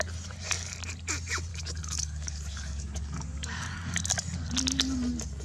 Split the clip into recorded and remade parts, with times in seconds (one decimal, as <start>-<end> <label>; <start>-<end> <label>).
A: 0.0-1.5 recorded; 1.5-4.1 remade; 4.1-5.4 recorded